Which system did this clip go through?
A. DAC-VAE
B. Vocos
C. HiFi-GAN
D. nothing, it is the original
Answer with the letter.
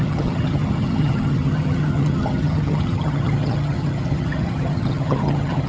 C